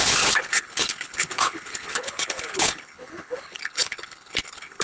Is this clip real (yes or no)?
no